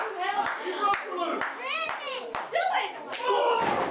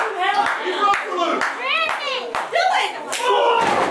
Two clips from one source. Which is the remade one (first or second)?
first